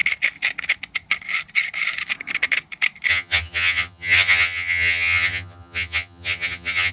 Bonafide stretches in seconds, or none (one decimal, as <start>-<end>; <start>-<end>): 0.0-3.1

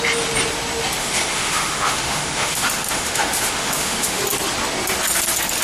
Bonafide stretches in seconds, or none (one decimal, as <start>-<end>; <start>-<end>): 0.0-1.0; 4.2-5.6

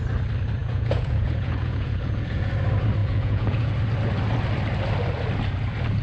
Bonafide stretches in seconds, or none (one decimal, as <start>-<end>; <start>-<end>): 0.0-0.6; 2.5-3.0; 3.7-6.0